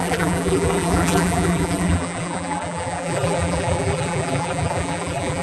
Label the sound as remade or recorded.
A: remade